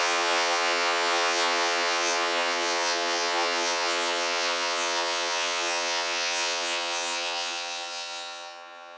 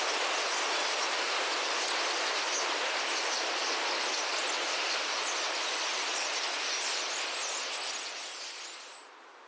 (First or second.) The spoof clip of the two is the first